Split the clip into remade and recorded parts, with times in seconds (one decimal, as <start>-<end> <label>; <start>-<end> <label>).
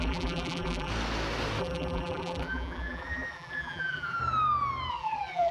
0.0-0.9 remade; 0.9-1.6 recorded; 1.6-4.2 remade; 4.2-4.9 recorded; 4.9-5.5 remade